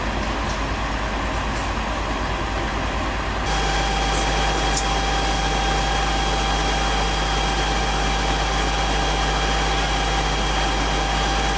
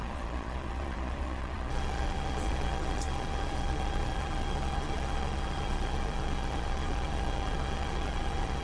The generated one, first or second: second